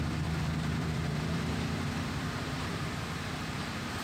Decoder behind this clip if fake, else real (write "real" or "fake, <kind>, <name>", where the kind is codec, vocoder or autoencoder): fake, vocoder, BigVGAN v2